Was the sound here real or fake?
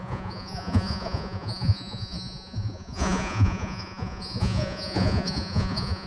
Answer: fake